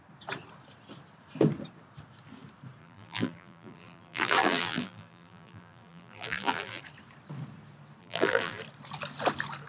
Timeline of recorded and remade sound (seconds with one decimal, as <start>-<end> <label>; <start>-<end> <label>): 0.0-2.8 recorded; 2.8-6.8 remade; 6.8-8.0 recorded; 8.0-8.6 remade; 8.6-9.7 recorded